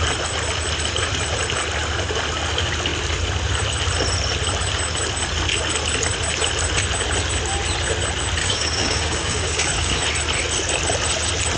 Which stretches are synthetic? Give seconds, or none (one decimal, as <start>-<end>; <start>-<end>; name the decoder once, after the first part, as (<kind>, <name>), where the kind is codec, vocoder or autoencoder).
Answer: 8.4-10.0 (codec, DAC)